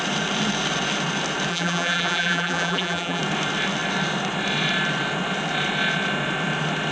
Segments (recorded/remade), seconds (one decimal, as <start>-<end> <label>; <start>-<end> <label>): 0.0-1.5 recorded; 1.5-3.2 remade; 3.2-6.9 recorded